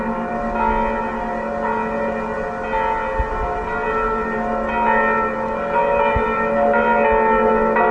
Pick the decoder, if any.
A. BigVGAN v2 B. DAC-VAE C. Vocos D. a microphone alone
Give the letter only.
D